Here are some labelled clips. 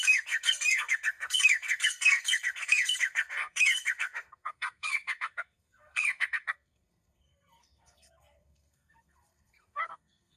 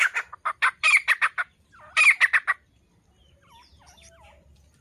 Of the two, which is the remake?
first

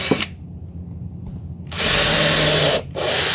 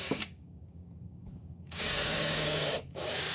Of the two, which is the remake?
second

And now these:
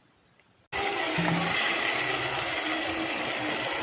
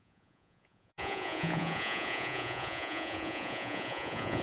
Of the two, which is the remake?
second